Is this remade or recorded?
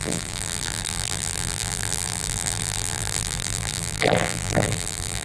remade